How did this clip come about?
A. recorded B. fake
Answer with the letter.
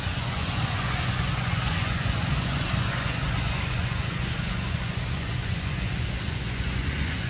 B